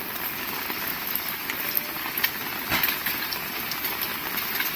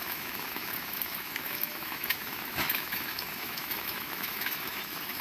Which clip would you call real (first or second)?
first